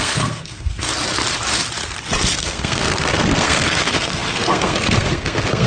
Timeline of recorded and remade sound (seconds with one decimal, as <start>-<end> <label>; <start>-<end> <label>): 0.0-0.9 remade; 0.9-2.4 recorded; 2.4-5.7 remade